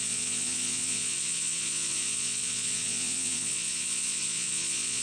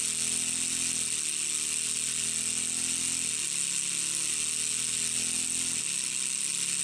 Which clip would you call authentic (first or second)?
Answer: second